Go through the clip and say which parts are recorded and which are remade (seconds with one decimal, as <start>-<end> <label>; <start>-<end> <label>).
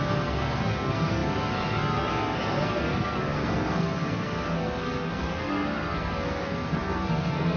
0.0-7.6 remade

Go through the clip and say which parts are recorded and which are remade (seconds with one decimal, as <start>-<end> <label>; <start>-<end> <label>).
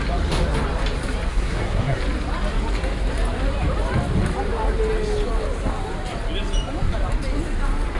0.0-1.3 recorded; 1.3-2.0 remade; 2.0-8.0 recorded